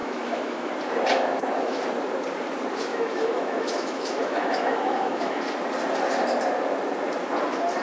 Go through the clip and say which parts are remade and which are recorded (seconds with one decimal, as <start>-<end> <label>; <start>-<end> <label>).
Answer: 0.0-0.7 remade; 0.7-1.1 recorded; 1.1-1.8 remade; 1.8-2.9 recorded; 2.9-5.4 remade; 5.4-7.8 recorded